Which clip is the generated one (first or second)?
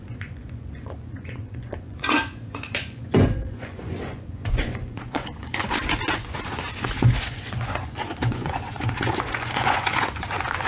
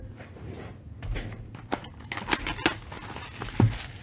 first